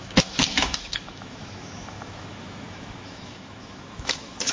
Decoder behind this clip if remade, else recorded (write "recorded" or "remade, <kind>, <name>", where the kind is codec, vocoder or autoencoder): remade, autoencoder, DAC-VAE